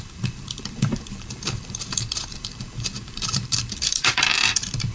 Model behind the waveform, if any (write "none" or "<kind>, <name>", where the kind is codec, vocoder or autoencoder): vocoder, BigVGAN v2